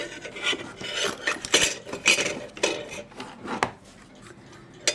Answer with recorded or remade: recorded